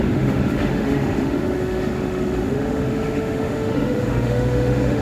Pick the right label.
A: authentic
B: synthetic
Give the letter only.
B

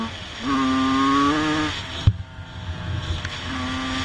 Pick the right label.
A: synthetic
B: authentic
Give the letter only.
B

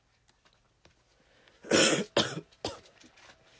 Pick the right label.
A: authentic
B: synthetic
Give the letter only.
A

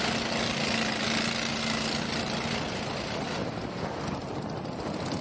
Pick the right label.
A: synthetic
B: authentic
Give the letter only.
B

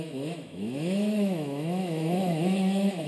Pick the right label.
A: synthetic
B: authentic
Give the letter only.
A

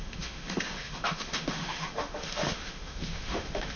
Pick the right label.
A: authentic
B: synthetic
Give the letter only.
B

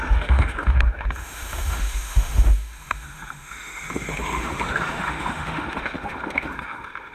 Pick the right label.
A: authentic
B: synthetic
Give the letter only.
B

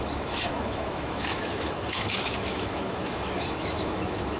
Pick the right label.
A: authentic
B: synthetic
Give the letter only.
B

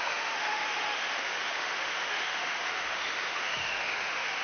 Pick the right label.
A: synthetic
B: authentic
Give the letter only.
A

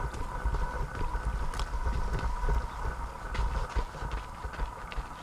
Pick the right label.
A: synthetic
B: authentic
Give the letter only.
B